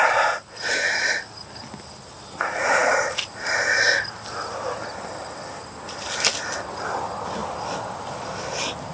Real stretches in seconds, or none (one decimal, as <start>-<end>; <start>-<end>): 0.0-8.9